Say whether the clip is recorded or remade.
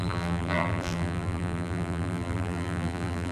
remade